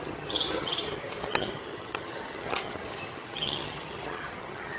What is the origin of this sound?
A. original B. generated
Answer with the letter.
B